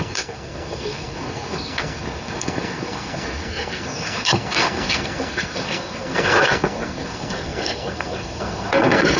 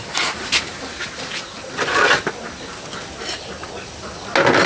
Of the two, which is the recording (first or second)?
second